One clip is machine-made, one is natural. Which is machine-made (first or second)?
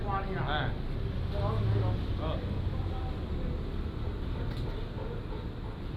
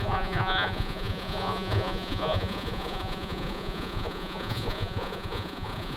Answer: second